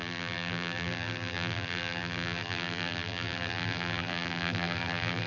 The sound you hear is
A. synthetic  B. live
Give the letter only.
A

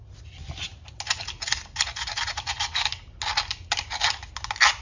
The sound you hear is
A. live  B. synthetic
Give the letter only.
A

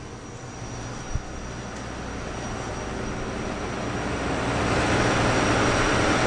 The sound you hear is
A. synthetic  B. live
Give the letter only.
B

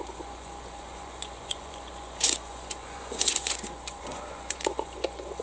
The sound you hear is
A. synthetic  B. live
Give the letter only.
A